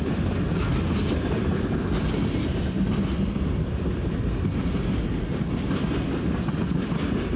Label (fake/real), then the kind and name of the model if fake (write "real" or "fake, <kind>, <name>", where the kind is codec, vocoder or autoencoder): real